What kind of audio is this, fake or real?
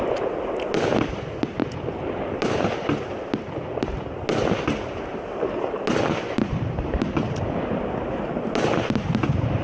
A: real